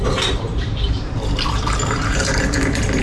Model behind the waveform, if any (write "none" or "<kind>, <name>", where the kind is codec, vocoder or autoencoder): vocoder, BigVGAN v2